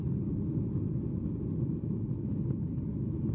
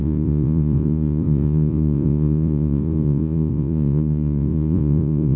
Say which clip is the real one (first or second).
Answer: first